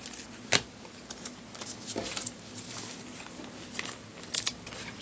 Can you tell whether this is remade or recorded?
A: recorded